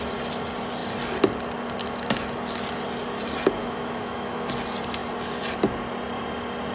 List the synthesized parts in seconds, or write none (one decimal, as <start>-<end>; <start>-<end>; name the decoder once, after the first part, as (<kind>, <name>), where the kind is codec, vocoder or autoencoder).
3.6-4.5 (autoencoder, DAC-VAE)